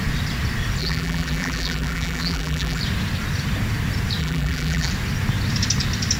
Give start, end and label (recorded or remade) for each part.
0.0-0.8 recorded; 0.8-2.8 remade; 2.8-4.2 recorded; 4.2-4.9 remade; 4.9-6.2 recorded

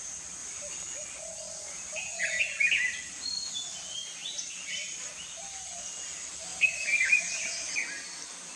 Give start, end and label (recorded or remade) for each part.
0.0-4.2 recorded; 4.2-5.1 remade; 5.1-6.5 recorded; 6.5-7.1 remade; 7.1-8.6 recorded

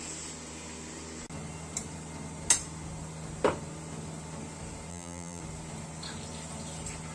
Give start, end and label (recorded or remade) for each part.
0.0-4.9 recorded; 4.9-5.4 remade; 5.4-7.1 recorded

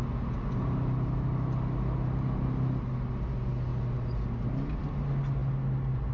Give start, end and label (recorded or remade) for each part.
0.0-6.1 recorded

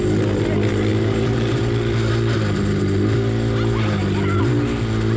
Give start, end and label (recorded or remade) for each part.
0.0-0.9 recorded; 0.9-1.6 remade; 1.6-5.2 recorded

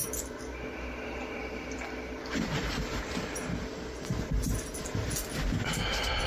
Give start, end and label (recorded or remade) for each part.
0.0-2.9 remade; 2.9-6.3 recorded

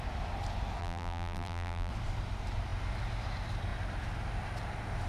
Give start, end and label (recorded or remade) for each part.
0.0-0.8 recorded; 0.8-1.9 remade; 1.9-5.1 recorded

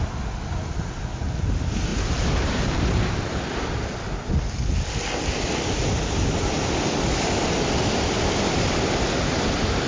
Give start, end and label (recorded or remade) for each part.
0.0-1.9 recorded; 1.9-3.3 remade; 3.3-9.9 recorded